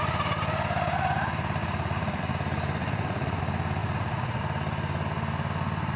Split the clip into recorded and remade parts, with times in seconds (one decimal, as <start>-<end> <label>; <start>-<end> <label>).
0.0-1.6 recorded; 1.6-2.2 remade; 2.2-2.8 recorded; 2.8-3.4 remade; 3.4-3.8 recorded; 3.8-4.4 remade; 4.4-6.0 recorded